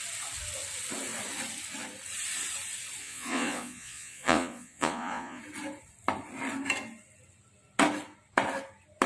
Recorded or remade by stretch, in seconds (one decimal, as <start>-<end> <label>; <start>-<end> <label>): 0.0-3.0 recorded; 3.0-5.4 remade; 5.4-9.1 recorded